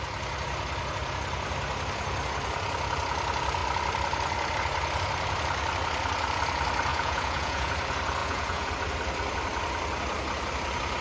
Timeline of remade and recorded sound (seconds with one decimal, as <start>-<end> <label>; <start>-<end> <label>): 0.0-6.9 recorded; 6.9-7.7 remade; 7.7-8.2 recorded; 8.2-8.7 remade; 8.7-11.0 recorded